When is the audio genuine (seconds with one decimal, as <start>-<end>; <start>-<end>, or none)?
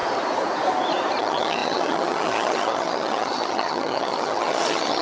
0.0-1.2